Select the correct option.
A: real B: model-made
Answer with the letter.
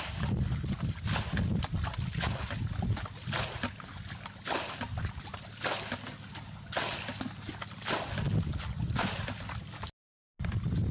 A